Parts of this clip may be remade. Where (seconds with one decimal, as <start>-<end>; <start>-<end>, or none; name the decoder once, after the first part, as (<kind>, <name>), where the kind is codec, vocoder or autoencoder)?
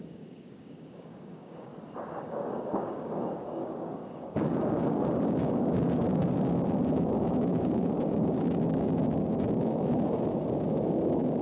0.0-1.7 (codec, DAC); 2.2-11.4